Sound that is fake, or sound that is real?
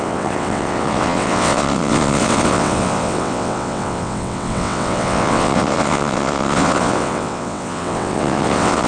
fake